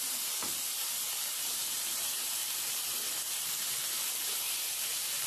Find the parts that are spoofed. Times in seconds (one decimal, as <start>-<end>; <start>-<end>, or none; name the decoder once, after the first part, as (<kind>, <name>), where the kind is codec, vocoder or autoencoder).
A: 0.0-2.4 (vocoder, BigVGAN v2); 4.7-5.3